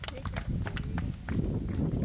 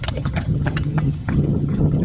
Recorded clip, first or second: first